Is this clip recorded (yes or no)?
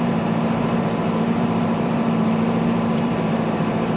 no